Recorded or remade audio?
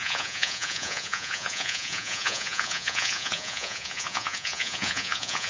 remade